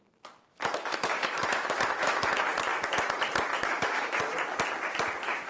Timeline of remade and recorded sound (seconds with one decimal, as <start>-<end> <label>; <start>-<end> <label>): 0.0-0.5 recorded; 0.5-2.4 remade; 2.4-3.5 recorded; 3.5-4.2 remade; 4.2-5.5 recorded